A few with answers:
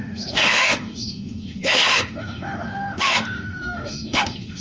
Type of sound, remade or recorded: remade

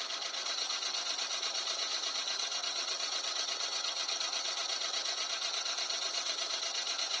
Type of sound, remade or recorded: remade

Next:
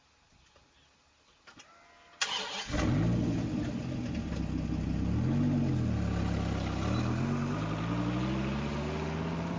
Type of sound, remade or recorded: recorded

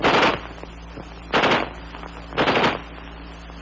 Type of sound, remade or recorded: recorded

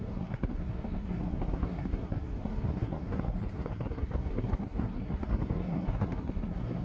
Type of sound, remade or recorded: remade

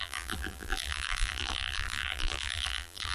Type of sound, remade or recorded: remade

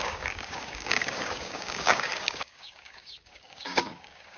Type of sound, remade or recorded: remade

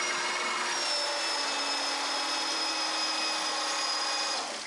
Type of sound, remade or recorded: recorded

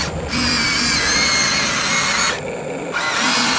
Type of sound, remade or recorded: recorded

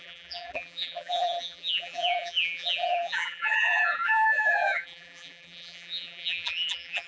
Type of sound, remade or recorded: remade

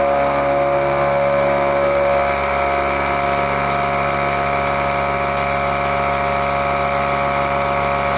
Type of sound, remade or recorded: recorded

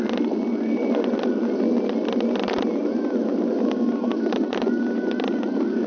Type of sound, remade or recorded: recorded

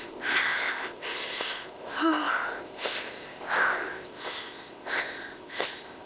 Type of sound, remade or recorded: remade